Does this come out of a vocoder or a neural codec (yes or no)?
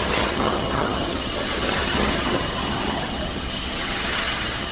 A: yes